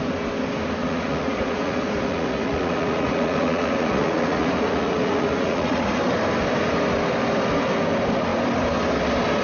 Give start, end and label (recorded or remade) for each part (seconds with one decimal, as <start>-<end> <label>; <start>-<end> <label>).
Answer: 0.0-0.8 recorded; 0.8-6.0 remade; 6.0-9.4 recorded